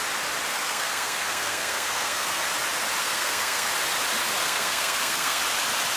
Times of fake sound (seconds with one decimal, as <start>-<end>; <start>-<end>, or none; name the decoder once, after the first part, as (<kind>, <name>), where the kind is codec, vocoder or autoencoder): 0.5-2.4 (codec, SNAC); 3.0-3.7; 4.4-5.4